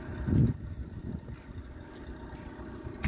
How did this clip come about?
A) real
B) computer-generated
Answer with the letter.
A